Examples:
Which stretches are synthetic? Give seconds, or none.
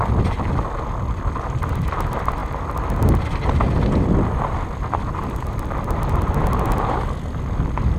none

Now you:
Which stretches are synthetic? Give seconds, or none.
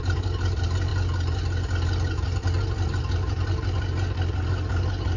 none